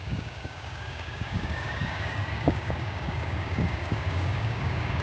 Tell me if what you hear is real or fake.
fake